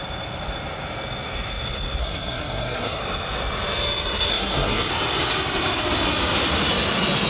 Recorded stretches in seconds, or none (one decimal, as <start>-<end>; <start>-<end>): 0.0-2.0; 3.0-4.3; 4.9-7.3